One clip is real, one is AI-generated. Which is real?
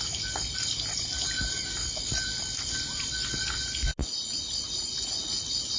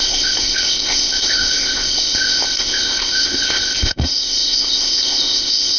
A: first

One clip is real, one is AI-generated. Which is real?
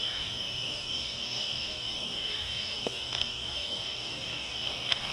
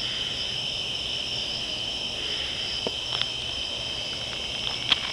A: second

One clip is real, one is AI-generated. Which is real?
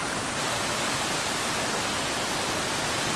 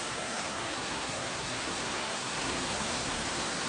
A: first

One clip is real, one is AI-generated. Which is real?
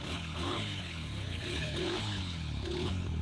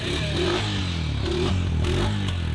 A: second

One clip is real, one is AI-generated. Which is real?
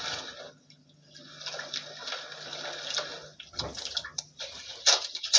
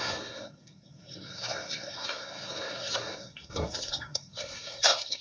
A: first